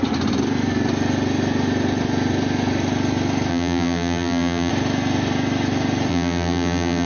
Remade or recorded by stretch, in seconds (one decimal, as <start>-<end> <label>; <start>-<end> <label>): 0.0-3.5 recorded; 3.5-4.7 remade; 4.7-6.1 recorded; 6.1-7.1 remade